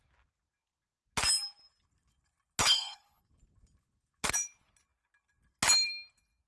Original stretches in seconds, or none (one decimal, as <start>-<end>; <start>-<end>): 0.0-2.6; 3.2-6.5